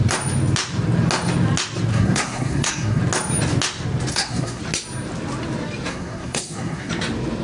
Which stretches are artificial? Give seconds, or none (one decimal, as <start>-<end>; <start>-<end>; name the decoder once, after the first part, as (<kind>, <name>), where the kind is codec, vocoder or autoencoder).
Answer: 1.9-3.0 (codec, SNAC); 4.1-4.6; 5.9-6.9

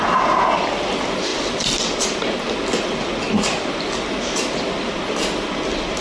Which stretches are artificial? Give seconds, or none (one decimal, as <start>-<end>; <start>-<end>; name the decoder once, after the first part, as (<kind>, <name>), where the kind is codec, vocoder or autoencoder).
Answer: none

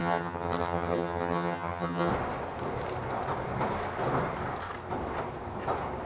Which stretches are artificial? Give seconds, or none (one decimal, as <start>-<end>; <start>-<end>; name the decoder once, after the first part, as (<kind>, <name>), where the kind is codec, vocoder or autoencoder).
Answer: 0.0-2.1 (vocoder, HiFi-GAN)

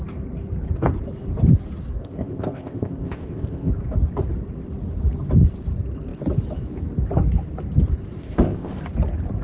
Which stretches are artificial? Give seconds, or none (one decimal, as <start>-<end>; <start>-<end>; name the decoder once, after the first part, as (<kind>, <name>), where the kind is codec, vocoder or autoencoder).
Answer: 2.0-3.7 (codec, ZipCodec); 8.2-8.7

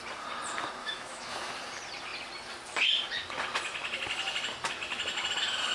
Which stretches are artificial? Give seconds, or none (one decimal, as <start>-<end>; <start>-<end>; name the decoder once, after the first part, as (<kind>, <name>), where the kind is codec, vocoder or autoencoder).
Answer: 0.8-1.5 (autoencoder, DAC-VAE)